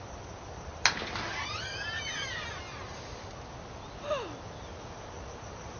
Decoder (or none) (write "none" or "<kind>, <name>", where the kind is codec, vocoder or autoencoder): none